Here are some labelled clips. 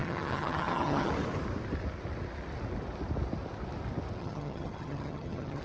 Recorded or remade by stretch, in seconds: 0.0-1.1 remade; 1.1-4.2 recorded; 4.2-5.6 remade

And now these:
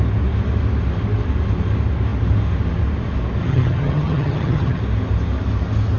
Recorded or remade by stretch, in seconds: 0.0-3.4 recorded; 3.4-4.8 remade; 4.8-6.0 recorded

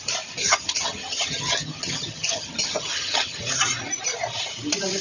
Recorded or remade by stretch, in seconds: 0.0-0.4 recorded; 0.4-3.4 remade; 3.4-5.0 recorded